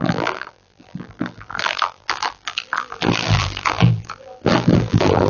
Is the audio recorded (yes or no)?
no